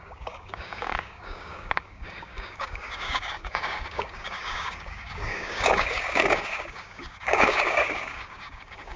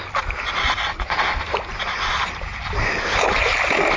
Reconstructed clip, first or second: first